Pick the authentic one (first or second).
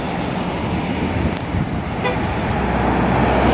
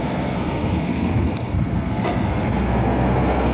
first